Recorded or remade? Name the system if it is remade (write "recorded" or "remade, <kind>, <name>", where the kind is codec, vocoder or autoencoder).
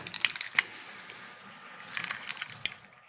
recorded